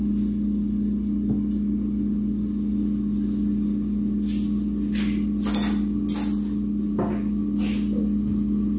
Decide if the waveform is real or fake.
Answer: real